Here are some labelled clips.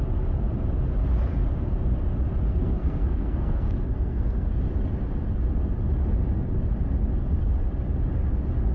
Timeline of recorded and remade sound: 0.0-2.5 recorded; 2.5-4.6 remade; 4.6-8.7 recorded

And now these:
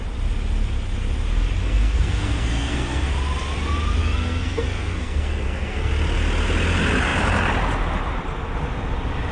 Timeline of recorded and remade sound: 0.0-1.6 recorded; 1.6-3.1 remade; 3.1-4.0 recorded; 4.0-5.9 remade; 5.9-9.3 recorded

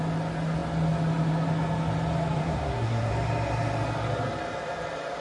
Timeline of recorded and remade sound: 0.0-2.4 recorded; 2.4-3.1 remade; 3.1-5.2 recorded

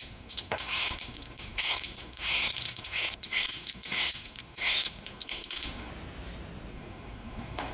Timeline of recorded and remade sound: 0.0-5.9 remade; 5.9-6.7 recorded; 6.7-7.7 remade

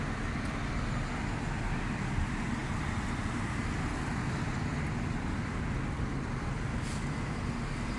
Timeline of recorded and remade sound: 0.0-8.0 recorded

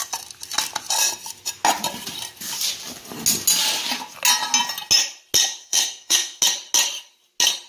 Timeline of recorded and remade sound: 0.0-5.6 recorded; 5.6-6.4 remade; 6.4-7.7 recorded

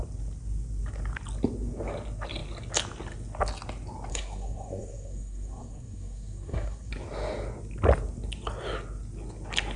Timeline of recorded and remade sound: 0.0-4.1 recorded; 4.1-6.9 remade; 6.9-9.8 recorded

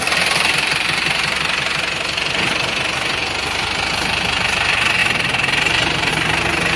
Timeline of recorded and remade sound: 0.0-6.8 recorded